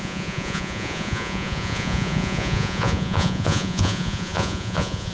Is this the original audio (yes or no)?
no